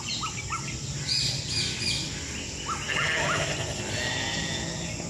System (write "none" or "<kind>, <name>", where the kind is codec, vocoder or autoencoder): none